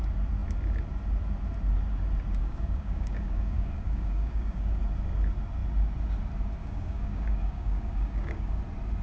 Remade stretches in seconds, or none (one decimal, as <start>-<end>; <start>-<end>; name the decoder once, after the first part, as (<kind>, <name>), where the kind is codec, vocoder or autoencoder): 2.4-4.8 (codec, DAC); 6.6-8.6